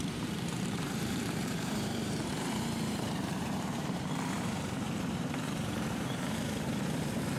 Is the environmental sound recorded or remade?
remade